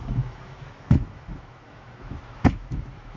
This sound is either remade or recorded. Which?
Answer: remade